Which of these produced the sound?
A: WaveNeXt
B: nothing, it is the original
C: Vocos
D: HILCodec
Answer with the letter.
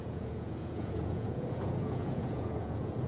C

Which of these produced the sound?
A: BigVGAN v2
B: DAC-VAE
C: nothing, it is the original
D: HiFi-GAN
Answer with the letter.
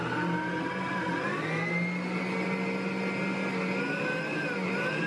C